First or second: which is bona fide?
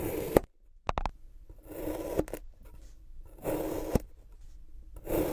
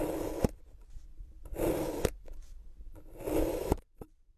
first